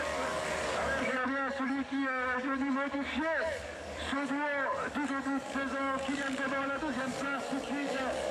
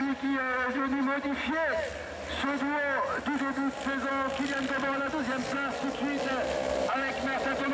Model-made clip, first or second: first